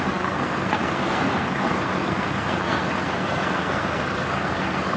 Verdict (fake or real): fake